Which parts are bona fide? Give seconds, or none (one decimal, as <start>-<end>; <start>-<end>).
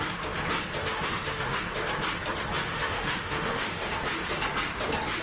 0.0-0.8; 1.6-2.7; 3.9-5.2